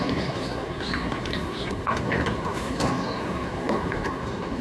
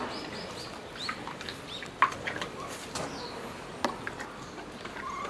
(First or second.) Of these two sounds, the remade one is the first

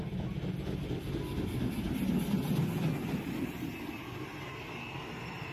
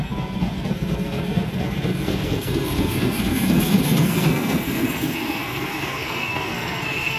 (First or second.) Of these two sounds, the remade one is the second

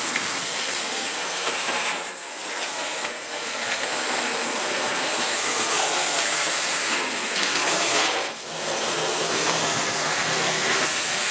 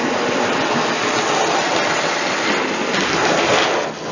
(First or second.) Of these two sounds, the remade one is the first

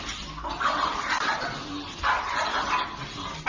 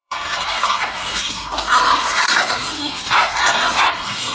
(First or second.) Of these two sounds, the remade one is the second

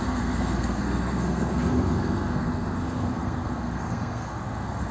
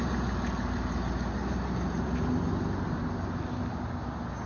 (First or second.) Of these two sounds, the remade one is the first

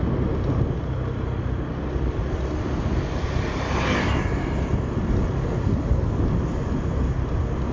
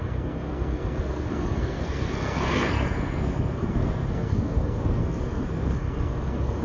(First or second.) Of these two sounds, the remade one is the second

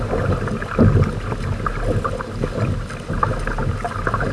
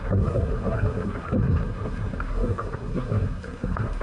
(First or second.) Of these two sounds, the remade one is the second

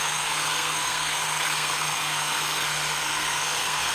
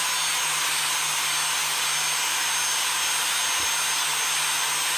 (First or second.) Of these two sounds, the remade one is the first